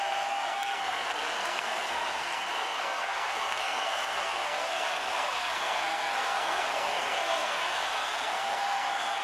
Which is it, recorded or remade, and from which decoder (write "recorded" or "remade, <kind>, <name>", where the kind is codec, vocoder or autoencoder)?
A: remade, codec, SNAC